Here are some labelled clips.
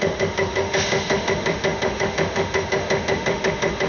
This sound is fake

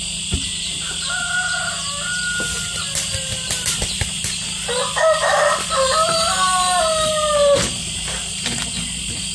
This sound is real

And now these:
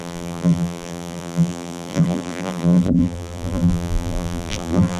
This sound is fake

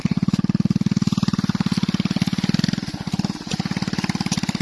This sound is real